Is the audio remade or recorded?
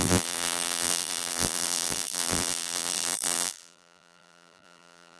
remade